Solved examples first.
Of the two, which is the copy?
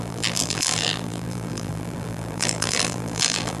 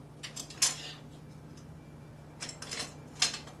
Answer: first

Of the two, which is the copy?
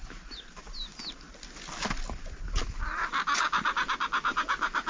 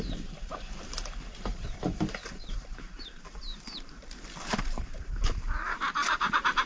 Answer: second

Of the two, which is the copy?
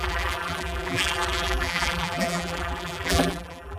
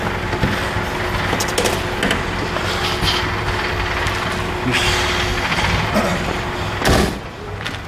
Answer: first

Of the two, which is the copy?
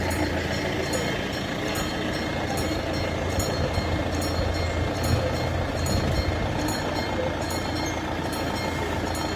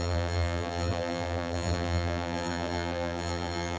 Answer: second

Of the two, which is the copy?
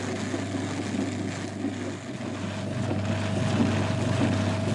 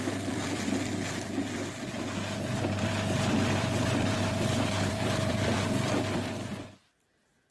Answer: second